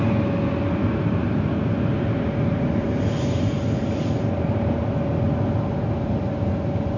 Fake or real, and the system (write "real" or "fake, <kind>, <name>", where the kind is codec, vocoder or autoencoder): real